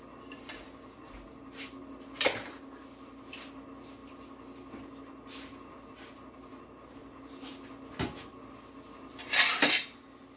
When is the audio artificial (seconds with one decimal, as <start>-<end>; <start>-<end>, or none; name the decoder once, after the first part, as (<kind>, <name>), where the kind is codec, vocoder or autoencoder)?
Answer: none